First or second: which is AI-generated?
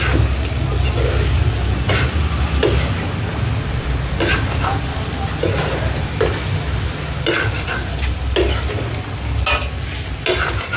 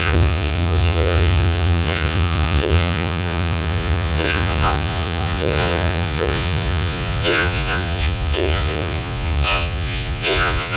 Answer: second